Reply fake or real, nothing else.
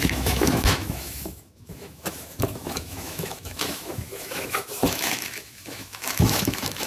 fake